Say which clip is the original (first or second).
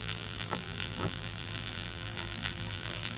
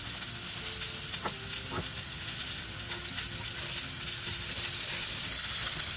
second